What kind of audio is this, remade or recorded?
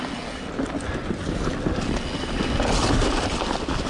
recorded